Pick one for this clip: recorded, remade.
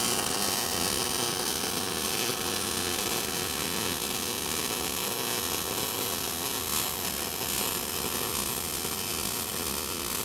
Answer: recorded